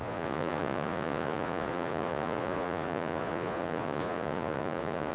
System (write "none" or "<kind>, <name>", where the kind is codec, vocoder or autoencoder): vocoder, Vocos